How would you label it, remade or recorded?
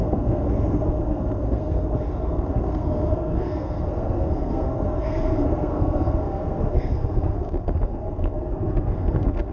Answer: remade